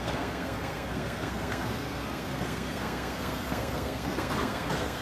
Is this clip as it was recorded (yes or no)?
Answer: no